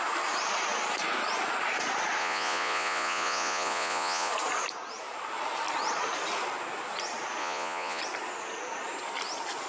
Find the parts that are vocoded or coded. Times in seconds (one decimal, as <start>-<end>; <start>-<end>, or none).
2.2-4.3; 7.4-8.0